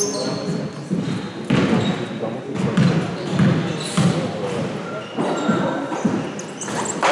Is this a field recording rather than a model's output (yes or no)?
yes